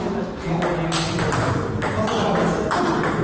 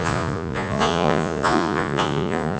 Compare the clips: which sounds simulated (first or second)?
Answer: second